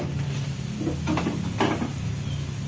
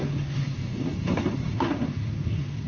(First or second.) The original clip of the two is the first